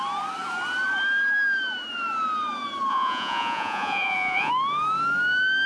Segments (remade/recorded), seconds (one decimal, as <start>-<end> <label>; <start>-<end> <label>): 0.0-2.9 recorded; 2.9-4.5 remade; 4.5-5.7 recorded